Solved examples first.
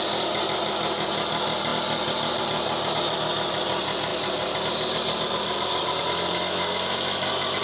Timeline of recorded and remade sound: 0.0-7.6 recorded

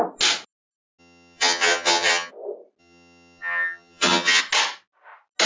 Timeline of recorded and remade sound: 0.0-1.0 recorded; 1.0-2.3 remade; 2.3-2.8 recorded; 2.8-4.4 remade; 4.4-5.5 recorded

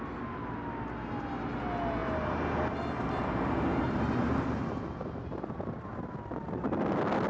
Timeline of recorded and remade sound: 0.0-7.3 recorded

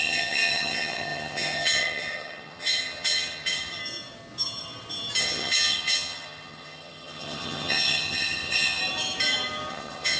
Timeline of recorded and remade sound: 0.0-3.8 remade; 3.8-5.2 recorded; 5.2-8.8 remade; 8.8-9.7 recorded; 9.7-10.2 remade

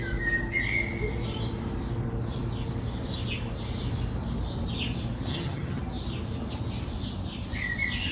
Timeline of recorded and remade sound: 0.0-5.3 recorded; 5.3-5.8 remade; 5.8-8.1 recorded